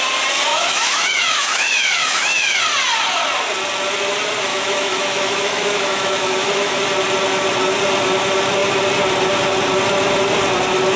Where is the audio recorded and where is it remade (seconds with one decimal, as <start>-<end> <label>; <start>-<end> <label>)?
0.0-0.5 recorded; 0.5-2.6 remade; 2.6-4.5 recorded; 4.5-6.8 remade; 6.8-11.0 recorded